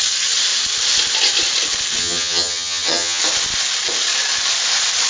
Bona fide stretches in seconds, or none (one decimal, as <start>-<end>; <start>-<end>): 0.0-2.0; 3.2-5.1